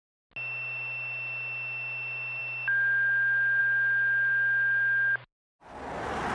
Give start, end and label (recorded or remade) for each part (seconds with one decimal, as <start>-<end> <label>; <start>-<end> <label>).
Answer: 0.0-6.3 recorded